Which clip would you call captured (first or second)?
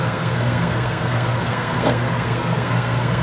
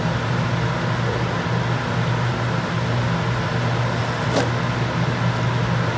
second